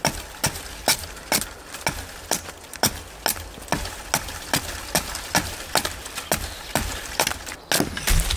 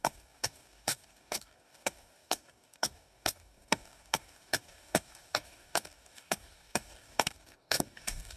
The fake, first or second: second